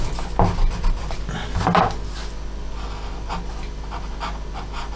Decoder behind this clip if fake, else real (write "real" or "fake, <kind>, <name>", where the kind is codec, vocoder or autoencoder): real